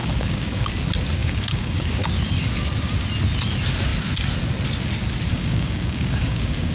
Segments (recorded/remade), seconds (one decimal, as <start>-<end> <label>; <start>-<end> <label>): 0.0-0.7 remade; 0.7-1.2 recorded; 1.2-2.1 remade; 2.1-5.3 recorded; 5.3-6.7 remade